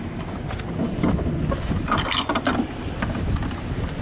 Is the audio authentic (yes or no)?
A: yes